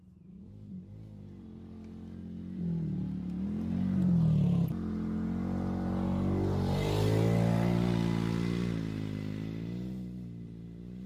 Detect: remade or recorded recorded